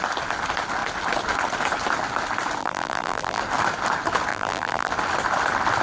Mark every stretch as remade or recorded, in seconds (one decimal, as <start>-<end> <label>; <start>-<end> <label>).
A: 0.0-2.6 recorded; 2.6-3.4 remade; 3.4-4.3 recorded; 4.3-4.9 remade; 4.9-5.8 recorded